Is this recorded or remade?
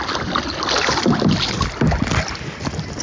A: recorded